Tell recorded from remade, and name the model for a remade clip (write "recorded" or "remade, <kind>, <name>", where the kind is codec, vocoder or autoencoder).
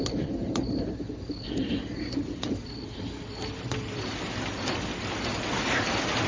recorded